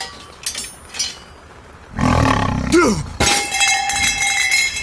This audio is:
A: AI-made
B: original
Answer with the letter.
B